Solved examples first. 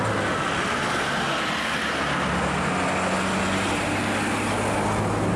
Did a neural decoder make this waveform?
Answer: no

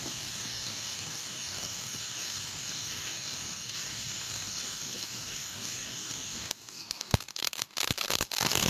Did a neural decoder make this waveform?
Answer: yes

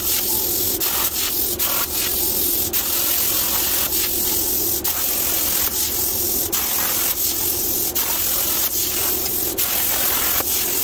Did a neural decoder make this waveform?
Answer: no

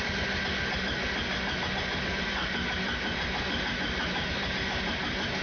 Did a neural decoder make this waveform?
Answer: no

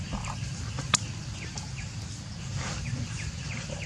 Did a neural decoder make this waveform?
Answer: no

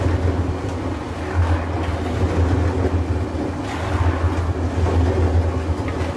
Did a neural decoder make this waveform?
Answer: no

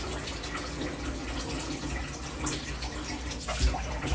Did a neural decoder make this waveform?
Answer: no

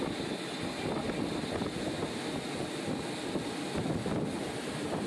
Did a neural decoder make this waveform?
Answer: no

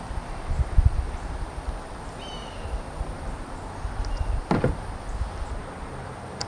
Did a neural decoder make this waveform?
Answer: no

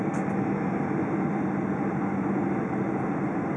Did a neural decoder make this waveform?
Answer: no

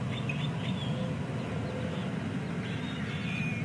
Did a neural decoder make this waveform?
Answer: no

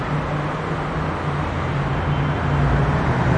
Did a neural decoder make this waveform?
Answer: no